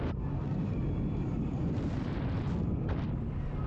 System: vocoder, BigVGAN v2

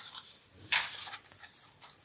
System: vocoder, BigVGAN v2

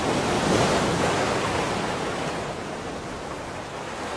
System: none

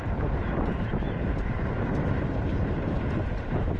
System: vocoder, BigVGAN v2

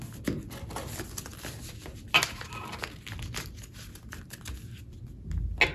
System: none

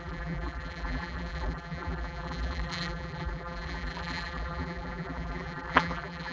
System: vocoder, BigVGAN v2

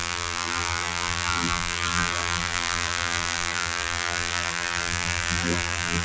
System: vocoder, BigVGAN v2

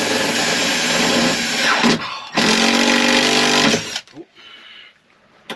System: none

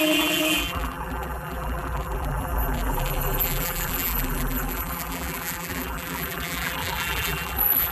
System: vocoder, BigVGAN v2